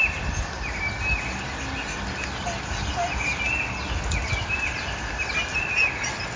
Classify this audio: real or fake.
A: real